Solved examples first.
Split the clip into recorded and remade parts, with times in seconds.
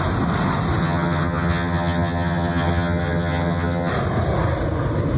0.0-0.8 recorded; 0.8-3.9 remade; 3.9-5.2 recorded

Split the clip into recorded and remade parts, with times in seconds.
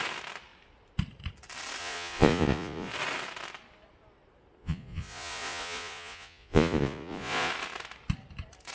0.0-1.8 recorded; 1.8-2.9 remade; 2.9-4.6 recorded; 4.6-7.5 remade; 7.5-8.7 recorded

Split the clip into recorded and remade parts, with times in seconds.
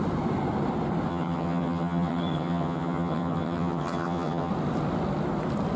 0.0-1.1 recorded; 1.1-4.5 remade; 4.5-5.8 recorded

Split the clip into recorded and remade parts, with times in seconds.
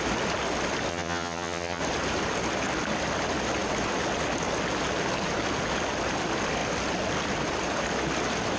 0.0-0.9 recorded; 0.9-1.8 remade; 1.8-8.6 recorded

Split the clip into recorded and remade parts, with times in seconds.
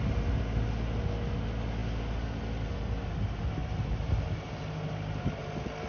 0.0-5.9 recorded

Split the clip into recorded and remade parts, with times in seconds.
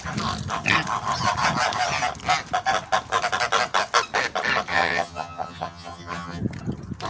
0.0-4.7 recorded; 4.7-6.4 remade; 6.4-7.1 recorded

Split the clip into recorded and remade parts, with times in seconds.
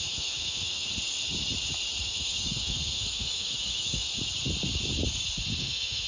0.0-0.9 remade; 0.9-2.0 recorded; 2.0-4.1 remade; 4.1-5.6 recorded; 5.6-6.1 remade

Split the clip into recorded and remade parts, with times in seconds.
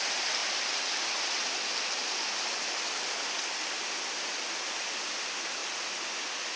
0.0-6.6 recorded